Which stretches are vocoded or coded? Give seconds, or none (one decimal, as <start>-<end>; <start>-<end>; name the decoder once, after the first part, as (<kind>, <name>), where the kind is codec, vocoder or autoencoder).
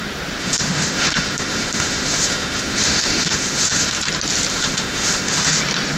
0.4-4.0 (autoencoder, DAC-VAE); 4.5-5.6